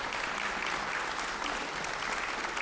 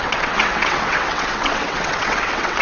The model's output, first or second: second